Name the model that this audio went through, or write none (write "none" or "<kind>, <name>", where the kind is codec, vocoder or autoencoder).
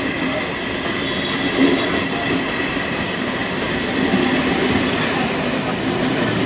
none